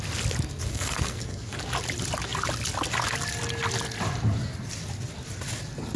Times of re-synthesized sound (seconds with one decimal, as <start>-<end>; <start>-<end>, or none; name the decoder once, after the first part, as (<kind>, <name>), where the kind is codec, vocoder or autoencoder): 0.7-1.6 (codec, SNAC)